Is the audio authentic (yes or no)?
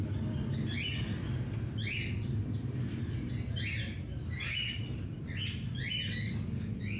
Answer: yes